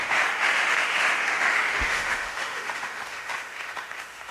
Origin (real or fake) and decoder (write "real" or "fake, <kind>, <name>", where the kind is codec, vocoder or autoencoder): fake, autoencoder, DAC-VAE